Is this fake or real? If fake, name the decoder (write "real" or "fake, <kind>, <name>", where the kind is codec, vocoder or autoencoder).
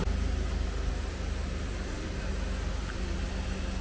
real